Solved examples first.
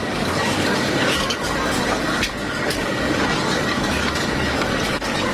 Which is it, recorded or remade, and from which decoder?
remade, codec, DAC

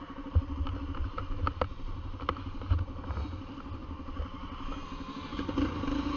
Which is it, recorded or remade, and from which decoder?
recorded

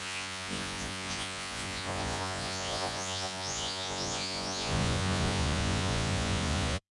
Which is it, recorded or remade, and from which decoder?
remade, vocoder, Vocos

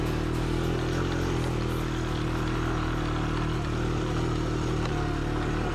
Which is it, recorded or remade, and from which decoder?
recorded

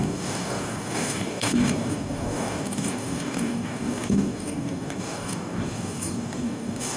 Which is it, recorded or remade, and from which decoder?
remade, codec, DAC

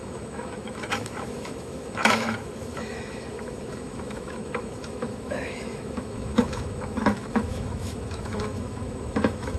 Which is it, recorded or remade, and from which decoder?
remade, autoencoder, DAC-VAE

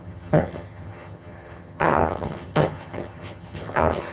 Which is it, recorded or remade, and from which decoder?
remade, vocoder, HiFi-GAN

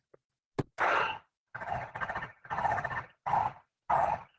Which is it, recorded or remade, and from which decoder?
recorded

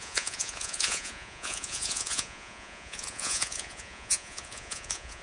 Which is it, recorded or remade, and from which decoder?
remade, vocoder, Vocos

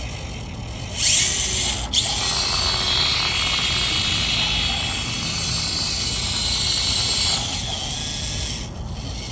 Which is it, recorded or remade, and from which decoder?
recorded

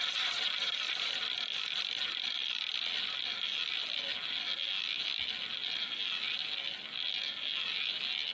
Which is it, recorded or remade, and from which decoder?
recorded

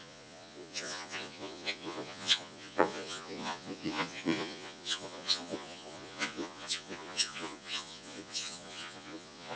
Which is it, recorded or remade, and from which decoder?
remade, vocoder, Vocos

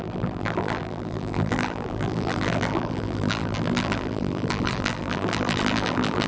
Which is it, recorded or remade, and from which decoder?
remade, vocoder, BigVGAN v2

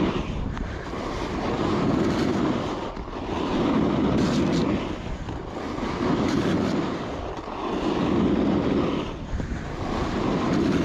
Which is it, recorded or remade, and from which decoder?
recorded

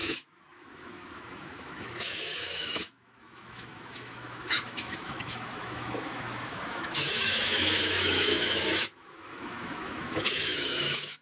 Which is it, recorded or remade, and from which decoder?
remade, autoencoder, DAC-VAE